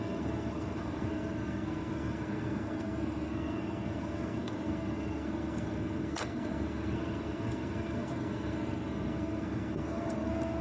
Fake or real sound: fake